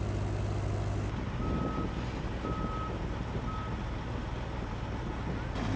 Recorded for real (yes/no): yes